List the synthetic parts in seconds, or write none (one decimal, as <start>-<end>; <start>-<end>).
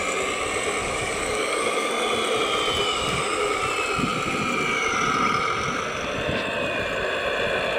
0.8-1.9; 2.8-3.6